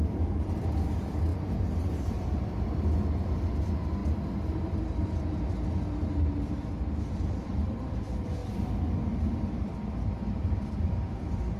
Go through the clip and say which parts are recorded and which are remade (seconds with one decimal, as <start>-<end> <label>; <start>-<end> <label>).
0.0-1.3 remade; 1.3-2.1 recorded; 2.1-4.0 remade; 4.0-7.1 recorded; 7.1-8.4 remade; 8.4-9.3 recorded; 9.3-11.6 remade

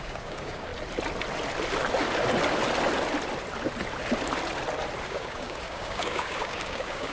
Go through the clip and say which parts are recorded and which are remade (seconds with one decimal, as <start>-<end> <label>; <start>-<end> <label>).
0.0-0.7 remade; 0.7-5.0 recorded; 5.0-7.1 remade

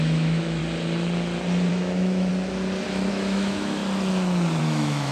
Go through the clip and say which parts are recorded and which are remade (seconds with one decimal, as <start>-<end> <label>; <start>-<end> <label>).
0.0-0.6 remade; 0.6-1.7 recorded; 1.7-2.3 remade; 2.3-3.1 recorded; 3.1-3.8 remade; 3.8-4.6 recorded; 4.6-5.1 remade

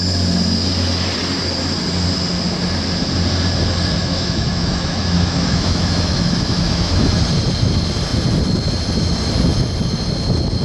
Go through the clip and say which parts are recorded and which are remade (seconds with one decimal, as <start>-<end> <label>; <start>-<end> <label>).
0.0-4.0 recorded; 4.0-7.2 remade; 7.2-10.6 recorded

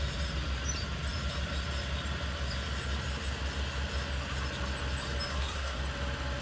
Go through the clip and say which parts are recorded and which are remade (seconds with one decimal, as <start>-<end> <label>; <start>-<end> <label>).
0.0-5.3 recorded; 5.3-5.8 remade; 5.8-6.4 recorded

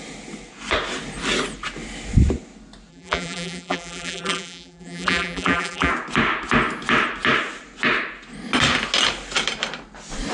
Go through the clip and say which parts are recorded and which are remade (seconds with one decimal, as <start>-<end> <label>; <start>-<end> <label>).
0.0-2.9 recorded; 2.9-5.9 remade; 5.9-10.3 recorded